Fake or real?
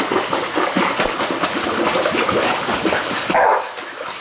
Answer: real